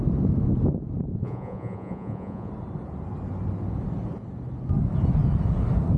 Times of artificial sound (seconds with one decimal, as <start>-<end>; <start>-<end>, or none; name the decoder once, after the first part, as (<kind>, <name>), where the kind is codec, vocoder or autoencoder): 1.1-2.5 (vocoder, Vocos)